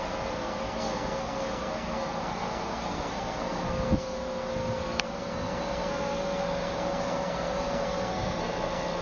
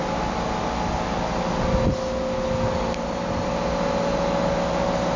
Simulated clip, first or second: first